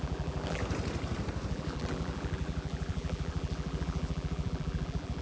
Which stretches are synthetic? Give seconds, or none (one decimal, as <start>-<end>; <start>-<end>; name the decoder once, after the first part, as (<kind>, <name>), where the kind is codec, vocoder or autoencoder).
0.0-0.6 (vocoder, BigVGAN v2); 1.5-5.2